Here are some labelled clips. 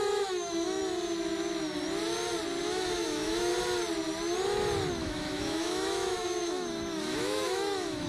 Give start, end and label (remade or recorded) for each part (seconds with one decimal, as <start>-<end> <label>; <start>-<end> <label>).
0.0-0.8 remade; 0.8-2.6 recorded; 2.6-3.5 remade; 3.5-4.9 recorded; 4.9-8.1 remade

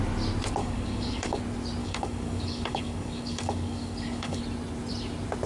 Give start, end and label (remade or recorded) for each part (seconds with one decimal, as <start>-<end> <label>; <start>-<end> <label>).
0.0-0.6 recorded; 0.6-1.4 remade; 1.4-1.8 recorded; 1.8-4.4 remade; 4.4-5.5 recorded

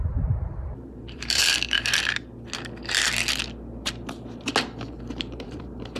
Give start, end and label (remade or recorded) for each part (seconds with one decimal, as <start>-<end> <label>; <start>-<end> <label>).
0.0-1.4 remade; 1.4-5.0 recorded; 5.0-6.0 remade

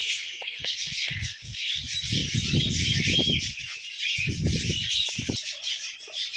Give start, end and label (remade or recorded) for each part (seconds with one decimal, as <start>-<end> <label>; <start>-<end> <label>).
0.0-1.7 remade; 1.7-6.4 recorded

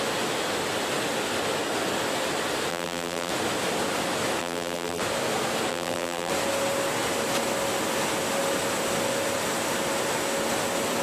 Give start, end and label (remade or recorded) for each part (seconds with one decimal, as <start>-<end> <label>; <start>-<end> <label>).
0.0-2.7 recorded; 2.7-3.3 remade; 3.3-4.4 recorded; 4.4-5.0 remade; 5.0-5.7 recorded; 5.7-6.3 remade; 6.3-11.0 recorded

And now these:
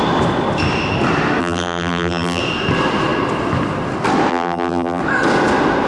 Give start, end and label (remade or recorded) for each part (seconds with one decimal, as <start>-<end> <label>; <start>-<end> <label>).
0.0-1.4 recorded; 1.4-2.4 remade; 2.4-4.3 recorded; 4.3-5.0 remade; 5.0-5.9 recorded